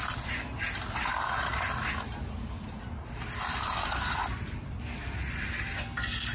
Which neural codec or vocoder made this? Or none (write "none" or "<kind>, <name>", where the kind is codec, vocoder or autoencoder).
none